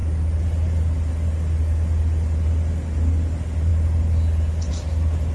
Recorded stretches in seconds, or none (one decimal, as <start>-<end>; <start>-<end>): 0.0-5.3